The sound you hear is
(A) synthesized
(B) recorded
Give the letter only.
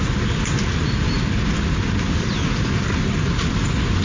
B